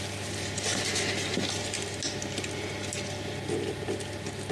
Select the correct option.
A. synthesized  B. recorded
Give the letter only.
B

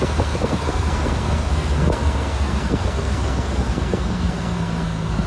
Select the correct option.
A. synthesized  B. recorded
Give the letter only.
A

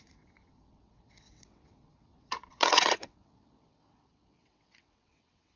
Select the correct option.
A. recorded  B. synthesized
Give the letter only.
B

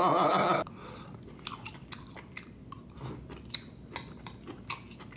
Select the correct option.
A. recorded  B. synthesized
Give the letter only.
A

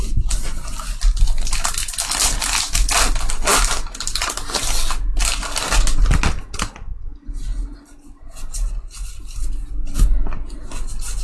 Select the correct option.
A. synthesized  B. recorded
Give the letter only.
B